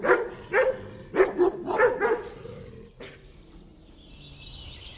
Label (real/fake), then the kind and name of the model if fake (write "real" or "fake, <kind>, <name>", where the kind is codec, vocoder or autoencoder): real